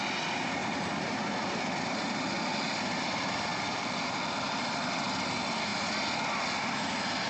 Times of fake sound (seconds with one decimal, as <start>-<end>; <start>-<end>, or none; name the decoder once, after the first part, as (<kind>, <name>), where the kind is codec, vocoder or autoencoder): 3.5-4.9 (vocoder, BigVGAN v2)